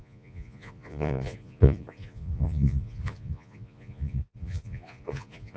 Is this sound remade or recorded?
remade